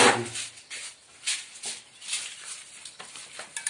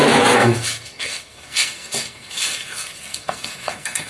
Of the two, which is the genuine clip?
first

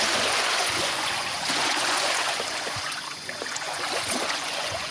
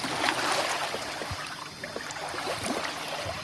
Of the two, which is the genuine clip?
second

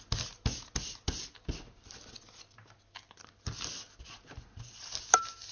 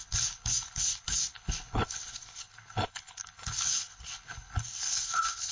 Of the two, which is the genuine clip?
first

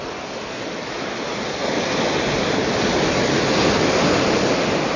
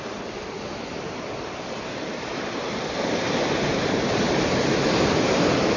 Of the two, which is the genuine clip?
first